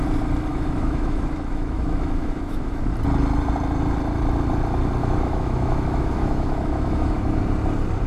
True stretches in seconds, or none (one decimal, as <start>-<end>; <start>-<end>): 0.0-0.5; 2.9-5.0; 7.4-8.1